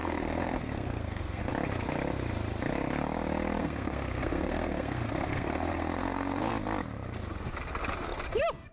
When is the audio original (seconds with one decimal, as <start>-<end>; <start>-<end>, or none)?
1.4-3.6; 6.5-8.7